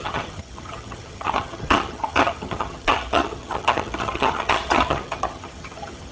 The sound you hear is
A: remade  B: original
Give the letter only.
A